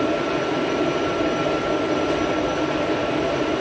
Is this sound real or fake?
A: real